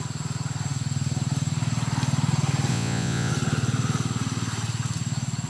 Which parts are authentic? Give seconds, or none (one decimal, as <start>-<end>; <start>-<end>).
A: 0.0-2.7; 3.3-5.5